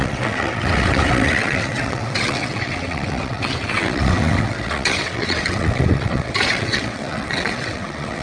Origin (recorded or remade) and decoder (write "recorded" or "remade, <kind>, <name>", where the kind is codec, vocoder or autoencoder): remade, vocoder, WaveNeXt